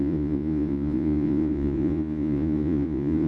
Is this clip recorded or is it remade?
remade